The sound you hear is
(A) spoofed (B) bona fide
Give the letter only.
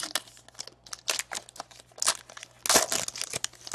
B